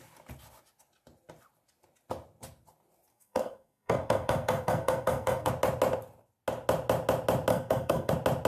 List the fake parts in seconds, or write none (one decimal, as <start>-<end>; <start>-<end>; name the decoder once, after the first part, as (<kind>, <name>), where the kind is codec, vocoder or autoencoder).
3.1-5.5 (codec, SNAC); 7.5-8.1